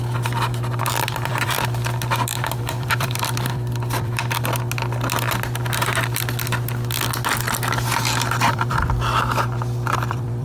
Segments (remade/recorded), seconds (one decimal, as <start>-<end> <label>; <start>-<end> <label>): 0.0-4.2 remade; 4.2-8.5 recorded; 8.5-10.4 remade